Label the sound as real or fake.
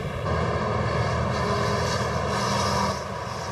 real